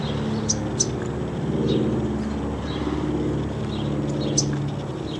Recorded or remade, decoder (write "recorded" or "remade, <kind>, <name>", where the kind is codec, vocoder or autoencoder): recorded